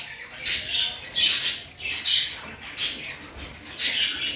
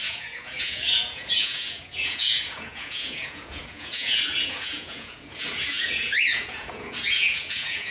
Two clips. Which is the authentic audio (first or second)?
first